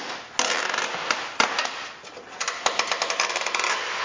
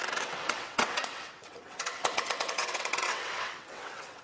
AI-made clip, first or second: second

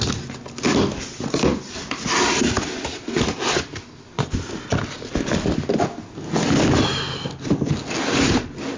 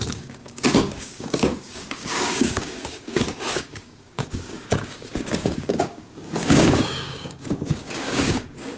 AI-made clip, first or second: second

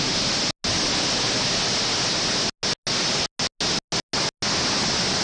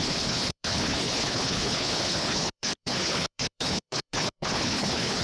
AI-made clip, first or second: second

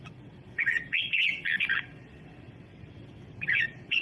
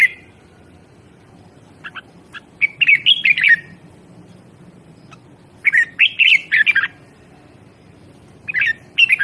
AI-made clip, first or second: first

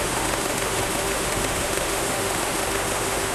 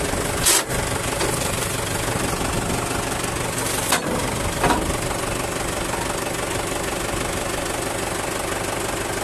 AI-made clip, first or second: first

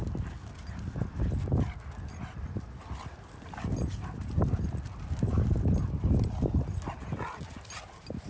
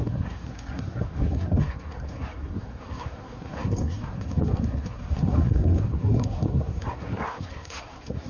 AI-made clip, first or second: second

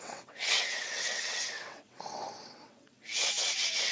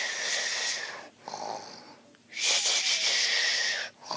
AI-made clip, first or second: first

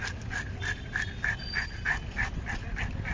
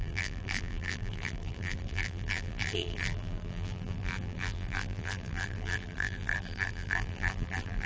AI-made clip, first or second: second